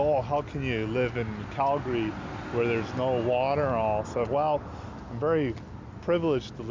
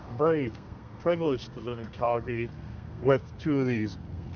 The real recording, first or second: first